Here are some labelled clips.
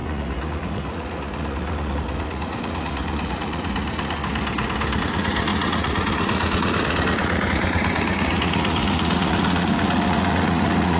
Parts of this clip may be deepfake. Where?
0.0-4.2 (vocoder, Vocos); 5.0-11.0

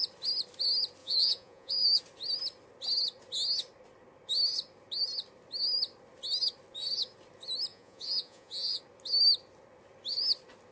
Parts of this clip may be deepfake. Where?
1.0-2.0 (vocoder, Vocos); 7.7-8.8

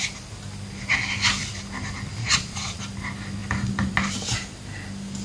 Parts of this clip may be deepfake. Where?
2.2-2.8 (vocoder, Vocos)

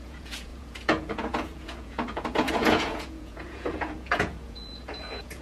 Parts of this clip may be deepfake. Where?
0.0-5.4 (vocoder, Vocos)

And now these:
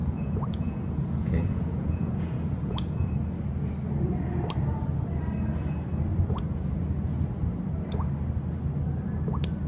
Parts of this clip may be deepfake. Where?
0.0-3.1 (vocoder, Vocos)